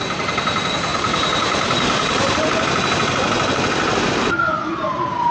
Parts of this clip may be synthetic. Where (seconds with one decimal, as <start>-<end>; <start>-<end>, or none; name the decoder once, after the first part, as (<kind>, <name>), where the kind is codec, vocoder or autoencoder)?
0.0-5.3 (vocoder, BigVGAN v2)